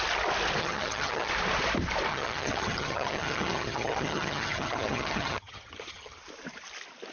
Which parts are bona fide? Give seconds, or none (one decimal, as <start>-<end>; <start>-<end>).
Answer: 0.0-0.6; 1.3-2.1; 6.2-7.1